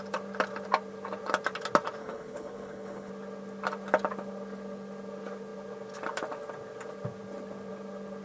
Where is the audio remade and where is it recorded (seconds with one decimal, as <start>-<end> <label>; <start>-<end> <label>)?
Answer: 0.0-2.0 recorded; 2.0-3.1 remade; 3.1-8.2 recorded